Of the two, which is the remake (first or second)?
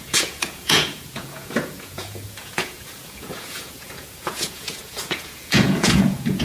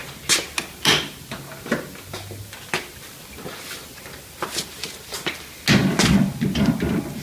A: first